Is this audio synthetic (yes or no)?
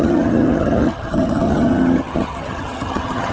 yes